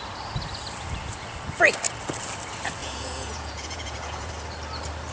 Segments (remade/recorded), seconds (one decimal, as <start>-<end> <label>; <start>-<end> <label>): 0.0-2.8 recorded; 2.8-4.3 remade; 4.3-5.1 recorded